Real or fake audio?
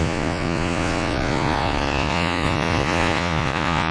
fake